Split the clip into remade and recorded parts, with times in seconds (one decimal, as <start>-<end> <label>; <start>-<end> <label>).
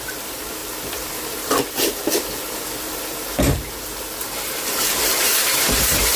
0.0-6.2 remade